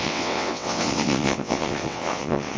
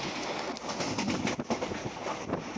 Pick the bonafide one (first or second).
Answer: second